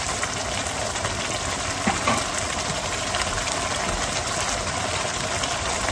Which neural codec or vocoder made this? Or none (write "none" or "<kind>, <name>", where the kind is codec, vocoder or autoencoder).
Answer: none